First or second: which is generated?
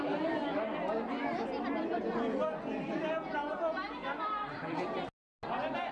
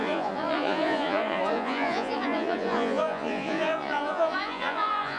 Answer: second